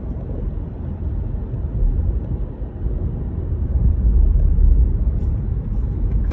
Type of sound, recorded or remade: recorded